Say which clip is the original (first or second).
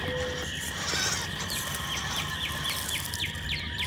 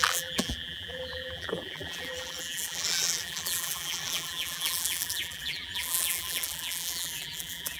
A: first